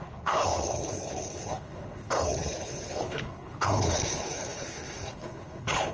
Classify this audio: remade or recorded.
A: remade